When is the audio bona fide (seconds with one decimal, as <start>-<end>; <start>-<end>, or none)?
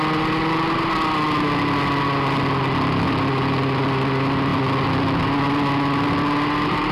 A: 0.0-6.9